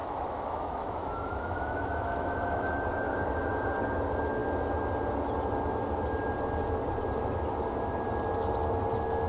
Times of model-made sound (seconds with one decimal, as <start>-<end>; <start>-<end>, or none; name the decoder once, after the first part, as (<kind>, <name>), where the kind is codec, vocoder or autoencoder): 0.0-2.7 (autoencoder, DAC-VAE)